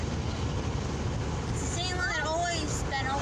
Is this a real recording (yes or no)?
yes